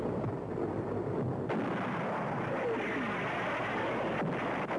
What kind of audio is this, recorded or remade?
recorded